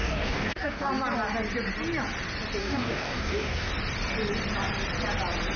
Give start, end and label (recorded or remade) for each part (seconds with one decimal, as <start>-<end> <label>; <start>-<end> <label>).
0.0-0.9 remade; 0.9-2.6 recorded; 2.6-3.7 remade; 3.7-5.6 recorded